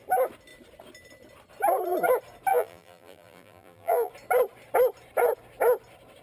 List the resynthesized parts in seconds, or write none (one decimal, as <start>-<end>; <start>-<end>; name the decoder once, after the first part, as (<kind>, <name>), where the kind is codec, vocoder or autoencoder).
2.5-4.1 (vocoder, BigVGAN v2)